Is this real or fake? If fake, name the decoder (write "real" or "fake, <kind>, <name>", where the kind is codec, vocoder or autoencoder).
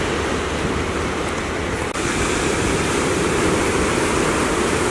fake, vocoder, BigVGAN v2